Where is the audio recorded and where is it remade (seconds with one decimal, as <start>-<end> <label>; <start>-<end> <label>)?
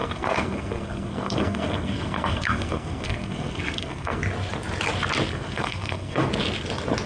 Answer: 0.0-4.2 remade; 4.2-5.3 recorded; 5.3-6.3 remade; 6.3-7.1 recorded